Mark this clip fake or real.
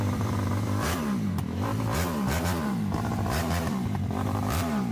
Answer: fake